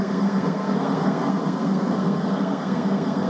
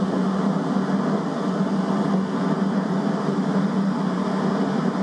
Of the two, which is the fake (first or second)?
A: first